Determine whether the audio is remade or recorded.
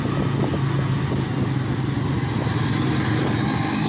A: recorded